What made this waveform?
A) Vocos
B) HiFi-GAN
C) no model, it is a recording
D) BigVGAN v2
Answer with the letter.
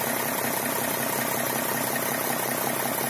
C